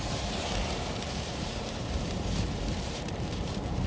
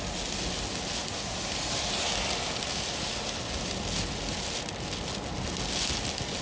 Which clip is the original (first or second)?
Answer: second